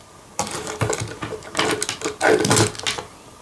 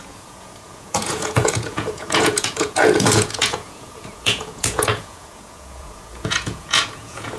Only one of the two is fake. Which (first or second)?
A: second